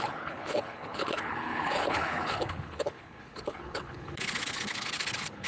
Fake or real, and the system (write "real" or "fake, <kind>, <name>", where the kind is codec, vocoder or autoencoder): fake, codec, HILCodec